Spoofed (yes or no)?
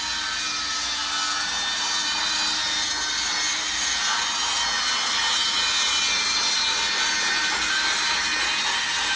no